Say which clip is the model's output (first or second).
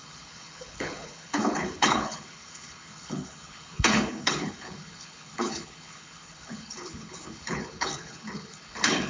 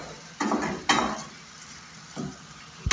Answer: first